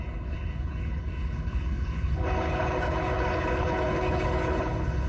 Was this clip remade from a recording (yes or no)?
yes